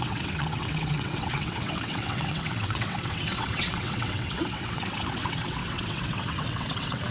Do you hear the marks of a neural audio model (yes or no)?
yes